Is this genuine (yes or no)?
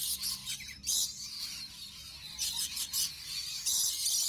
yes